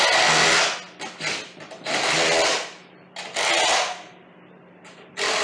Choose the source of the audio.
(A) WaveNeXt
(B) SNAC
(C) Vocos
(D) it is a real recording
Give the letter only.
D